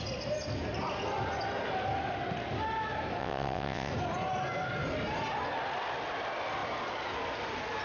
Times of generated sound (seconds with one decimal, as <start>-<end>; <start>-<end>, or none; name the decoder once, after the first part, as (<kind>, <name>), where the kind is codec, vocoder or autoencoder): 3.2-3.9 (vocoder, WaveNeXt)